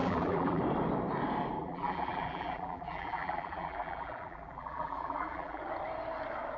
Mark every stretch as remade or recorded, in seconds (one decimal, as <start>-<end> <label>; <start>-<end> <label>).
0.0-0.6 remade; 0.6-1.6 recorded; 1.6-5.6 remade; 5.6-6.6 recorded